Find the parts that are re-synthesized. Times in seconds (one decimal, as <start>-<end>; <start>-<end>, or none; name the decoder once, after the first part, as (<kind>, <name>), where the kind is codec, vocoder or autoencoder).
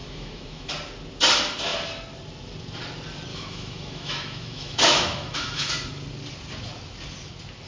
0.0-0.7 (autoencoder, DAC-VAE); 3.3-5.7